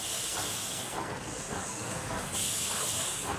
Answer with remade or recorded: remade